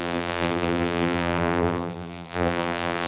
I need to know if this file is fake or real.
fake